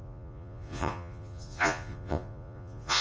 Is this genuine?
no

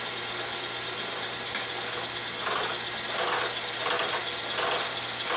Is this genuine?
yes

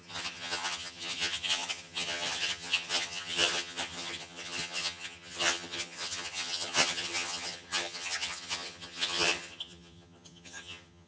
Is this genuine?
no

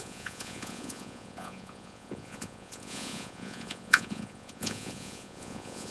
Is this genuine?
no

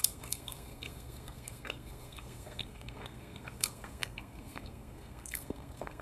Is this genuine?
no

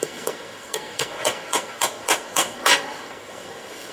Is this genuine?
no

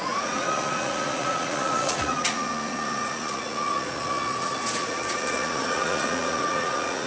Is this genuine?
no